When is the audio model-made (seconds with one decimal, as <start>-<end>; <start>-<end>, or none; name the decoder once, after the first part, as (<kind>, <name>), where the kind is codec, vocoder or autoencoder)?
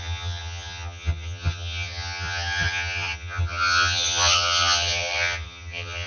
0.0-6.1 (vocoder, HiFi-GAN)